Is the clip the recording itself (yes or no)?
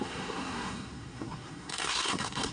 no